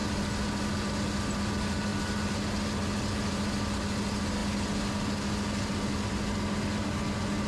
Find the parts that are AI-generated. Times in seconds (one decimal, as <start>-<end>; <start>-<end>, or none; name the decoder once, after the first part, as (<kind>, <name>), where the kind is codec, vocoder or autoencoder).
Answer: none